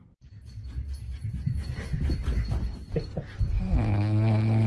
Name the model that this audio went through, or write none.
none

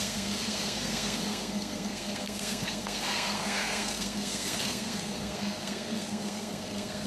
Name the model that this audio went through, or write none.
codec, SNAC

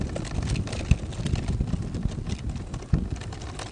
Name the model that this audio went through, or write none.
none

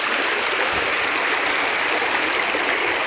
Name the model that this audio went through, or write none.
none